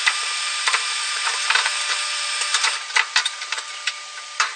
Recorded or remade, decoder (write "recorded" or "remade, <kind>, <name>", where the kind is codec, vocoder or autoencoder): remade, vocoder, BigVGAN v2